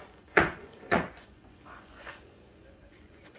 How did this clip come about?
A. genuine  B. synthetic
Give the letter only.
B